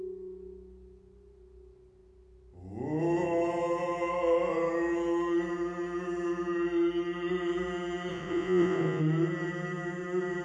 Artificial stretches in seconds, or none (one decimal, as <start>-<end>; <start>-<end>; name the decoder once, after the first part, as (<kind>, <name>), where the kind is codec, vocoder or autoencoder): 8.1-9.0 (vocoder, Vocos)